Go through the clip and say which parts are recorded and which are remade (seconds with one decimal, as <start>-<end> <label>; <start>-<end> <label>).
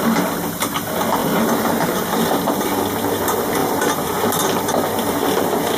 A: 0.0-1.2 recorded; 1.2-2.8 remade; 2.8-3.6 recorded; 3.6-4.6 remade; 4.6-5.8 recorded